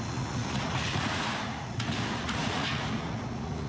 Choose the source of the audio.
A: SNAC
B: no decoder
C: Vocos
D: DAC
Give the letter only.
C